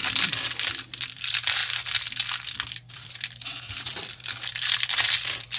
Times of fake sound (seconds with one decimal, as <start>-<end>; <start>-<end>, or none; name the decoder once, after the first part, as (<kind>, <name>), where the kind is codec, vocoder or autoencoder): 0.7-1.6 (vocoder, BigVGAN v2); 2.9-5.6